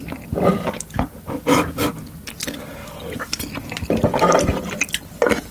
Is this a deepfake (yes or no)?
no